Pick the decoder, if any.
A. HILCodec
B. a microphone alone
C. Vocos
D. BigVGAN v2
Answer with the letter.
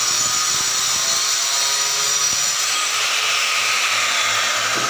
B